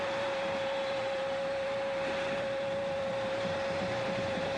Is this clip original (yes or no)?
no